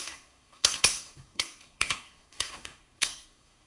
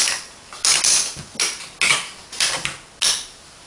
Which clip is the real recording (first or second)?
second